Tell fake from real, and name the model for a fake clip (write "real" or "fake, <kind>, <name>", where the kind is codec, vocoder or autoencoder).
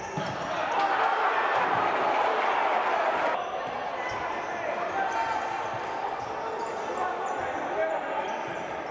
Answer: real